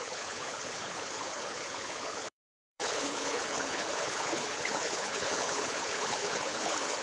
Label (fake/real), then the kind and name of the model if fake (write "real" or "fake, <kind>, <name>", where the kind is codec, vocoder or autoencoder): fake, codec, HILCodec